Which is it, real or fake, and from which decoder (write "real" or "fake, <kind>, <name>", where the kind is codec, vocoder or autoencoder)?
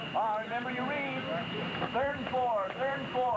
real